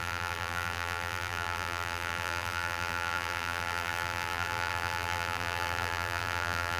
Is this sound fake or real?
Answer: fake